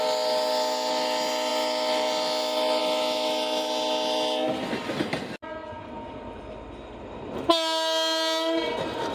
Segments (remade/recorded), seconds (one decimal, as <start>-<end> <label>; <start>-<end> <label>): 0.0-9.1 recorded